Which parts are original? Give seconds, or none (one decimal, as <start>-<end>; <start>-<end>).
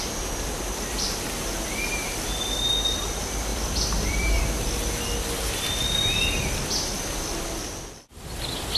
0.0-3.5; 4.4-8.8